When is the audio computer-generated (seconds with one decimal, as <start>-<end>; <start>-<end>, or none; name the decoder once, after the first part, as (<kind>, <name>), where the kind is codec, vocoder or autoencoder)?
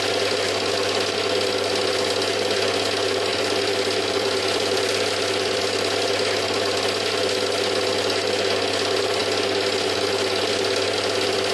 3.3-5.6 (vocoder, BigVGAN v2)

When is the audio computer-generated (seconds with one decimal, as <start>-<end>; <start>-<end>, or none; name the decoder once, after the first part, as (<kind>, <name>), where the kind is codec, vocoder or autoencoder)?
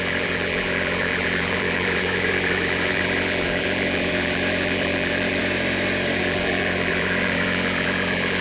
0.0-5.4 (vocoder, BigVGAN v2); 6.2-8.4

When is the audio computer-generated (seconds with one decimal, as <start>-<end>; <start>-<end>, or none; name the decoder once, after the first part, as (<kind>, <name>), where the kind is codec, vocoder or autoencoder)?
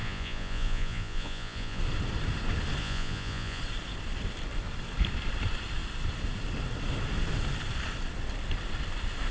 0.0-1.8 (vocoder, Vocos); 2.8-3.6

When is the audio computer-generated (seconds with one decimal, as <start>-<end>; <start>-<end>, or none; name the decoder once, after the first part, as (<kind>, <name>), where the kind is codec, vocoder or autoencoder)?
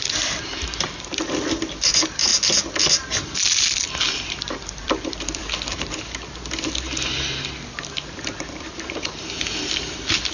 0.0-2.3 (vocoder, BigVGAN v2); 4.1-5.4; 7.7-10.3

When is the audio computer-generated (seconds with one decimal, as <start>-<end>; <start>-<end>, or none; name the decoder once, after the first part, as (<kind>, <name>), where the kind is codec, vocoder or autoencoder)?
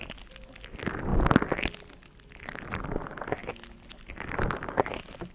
none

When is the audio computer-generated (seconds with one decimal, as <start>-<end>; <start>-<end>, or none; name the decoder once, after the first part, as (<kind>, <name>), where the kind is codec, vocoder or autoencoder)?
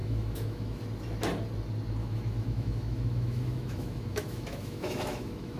0.0-0.8 (autoencoder, DAC-VAE); 2.0-5.6